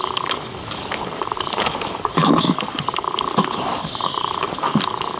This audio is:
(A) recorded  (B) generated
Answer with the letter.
B